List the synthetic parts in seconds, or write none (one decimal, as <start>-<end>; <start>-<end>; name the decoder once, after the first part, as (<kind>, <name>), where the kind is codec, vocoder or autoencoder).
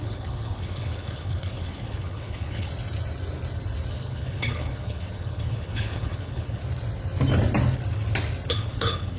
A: 0.0-2.7 (codec, HILCodec); 3.9-6.6; 8.5-9.2